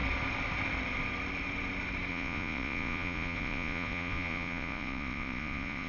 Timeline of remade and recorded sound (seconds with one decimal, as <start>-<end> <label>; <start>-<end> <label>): 0.0-2.1 recorded; 2.1-5.9 remade